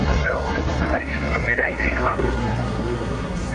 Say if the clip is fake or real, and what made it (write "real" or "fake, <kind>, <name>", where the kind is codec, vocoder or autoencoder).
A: fake, codec, SNAC